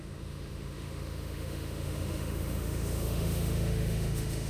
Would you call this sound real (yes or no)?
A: no